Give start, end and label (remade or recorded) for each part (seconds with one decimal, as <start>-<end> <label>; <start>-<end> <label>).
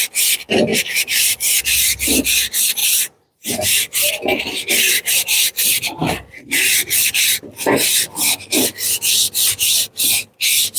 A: 0.0-0.7 recorded; 0.7-1.3 remade; 1.3-2.8 recorded; 2.8-4.1 remade; 4.1-10.8 recorded